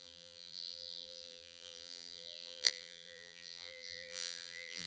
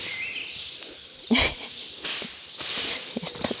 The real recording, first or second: second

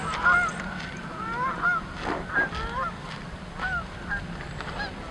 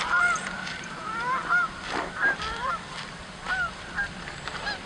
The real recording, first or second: first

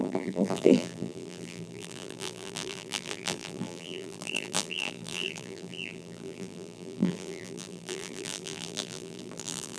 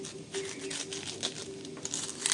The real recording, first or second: second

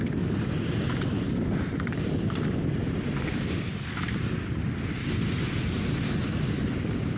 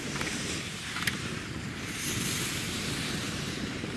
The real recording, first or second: first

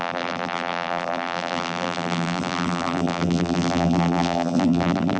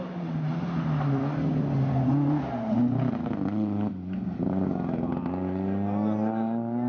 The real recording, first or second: second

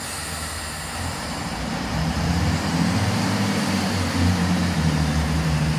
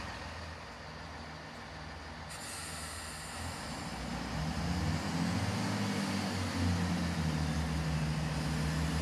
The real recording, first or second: second